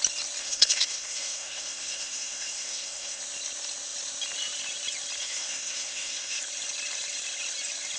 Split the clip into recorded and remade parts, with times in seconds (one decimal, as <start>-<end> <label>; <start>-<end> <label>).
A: 0.0-0.4 recorded; 0.4-3.2 remade; 3.2-5.2 recorded; 5.2-6.4 remade; 6.4-8.0 recorded